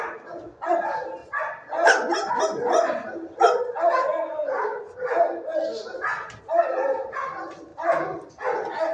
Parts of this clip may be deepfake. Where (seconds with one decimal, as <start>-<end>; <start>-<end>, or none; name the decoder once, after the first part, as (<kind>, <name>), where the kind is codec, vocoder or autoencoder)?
none